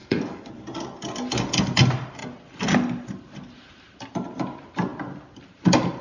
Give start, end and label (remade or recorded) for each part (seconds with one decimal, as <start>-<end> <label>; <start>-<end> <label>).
0.0-0.5 remade; 0.5-6.0 recorded